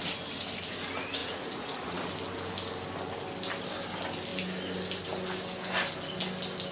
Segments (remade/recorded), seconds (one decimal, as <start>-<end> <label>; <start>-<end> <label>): 0.0-1.2 recorded; 1.2-2.1 remade; 2.1-6.7 recorded